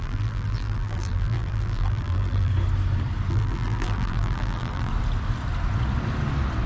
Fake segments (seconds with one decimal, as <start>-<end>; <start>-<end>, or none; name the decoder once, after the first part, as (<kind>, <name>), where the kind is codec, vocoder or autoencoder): 0.0-2.5 (vocoder, BigVGAN v2); 3.3-4.9